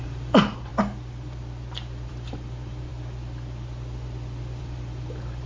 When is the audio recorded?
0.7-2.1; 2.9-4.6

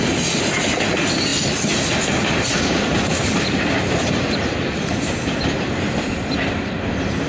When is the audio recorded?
0.0-7.3

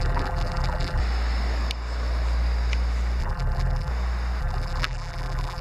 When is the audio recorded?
1.0-3.2; 3.9-4.4

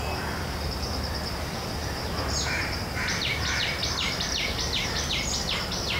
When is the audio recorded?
0.0-1.8; 5.1-6.0

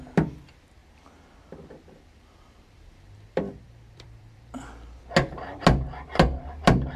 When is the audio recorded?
0.0-0.8; 5.0-7.0

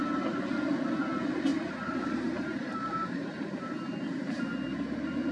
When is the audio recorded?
0.0-1.5; 4.4-5.3